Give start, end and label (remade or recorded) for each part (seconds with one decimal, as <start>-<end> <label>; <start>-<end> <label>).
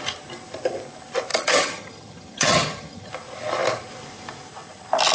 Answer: 0.0-1.3 recorded; 1.3-3.1 remade; 3.1-5.1 recorded